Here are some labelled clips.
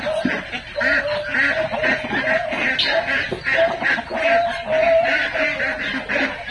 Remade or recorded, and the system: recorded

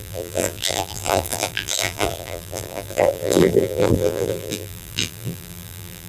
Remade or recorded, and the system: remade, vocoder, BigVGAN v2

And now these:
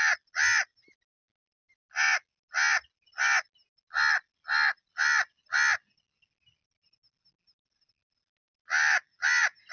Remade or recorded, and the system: recorded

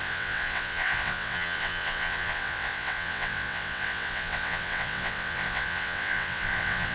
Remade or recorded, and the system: remade, vocoder, WaveNeXt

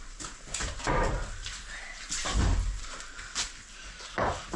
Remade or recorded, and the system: recorded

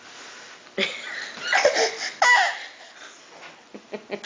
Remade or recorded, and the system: recorded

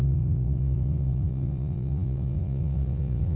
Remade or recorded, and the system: remade, vocoder, Vocos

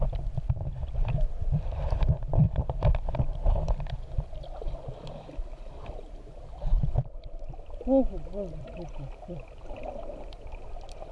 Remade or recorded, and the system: remade, vocoder, BigVGAN v2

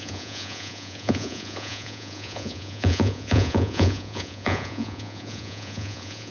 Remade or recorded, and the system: remade, vocoder, Vocos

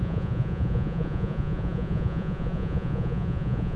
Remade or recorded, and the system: remade, vocoder, Vocos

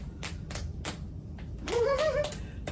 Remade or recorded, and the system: remade, vocoder, BigVGAN v2